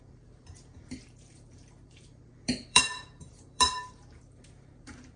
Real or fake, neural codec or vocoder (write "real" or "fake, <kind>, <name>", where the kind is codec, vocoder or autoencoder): fake, vocoder, BigVGAN v2